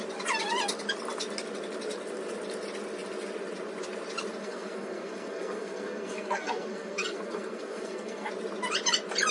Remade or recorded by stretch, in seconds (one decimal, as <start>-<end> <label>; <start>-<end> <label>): 0.0-4.4 recorded; 4.4-8.3 remade; 8.3-9.3 recorded